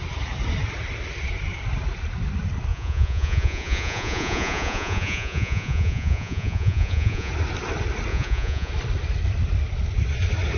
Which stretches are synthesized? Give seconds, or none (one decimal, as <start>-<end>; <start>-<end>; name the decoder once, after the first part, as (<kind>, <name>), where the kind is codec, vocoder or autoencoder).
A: 2.7-7.3 (vocoder, Vocos); 8.1-8.7